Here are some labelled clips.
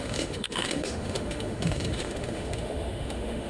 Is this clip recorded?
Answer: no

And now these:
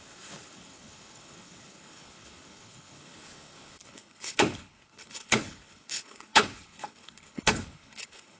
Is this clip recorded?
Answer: no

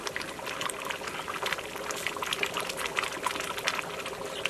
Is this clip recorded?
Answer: yes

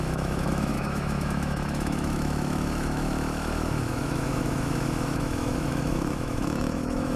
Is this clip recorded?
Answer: no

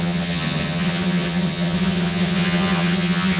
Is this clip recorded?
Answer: no